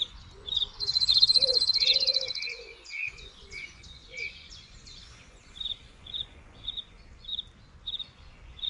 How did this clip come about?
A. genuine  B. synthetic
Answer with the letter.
B